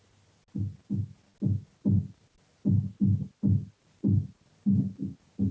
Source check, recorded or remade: recorded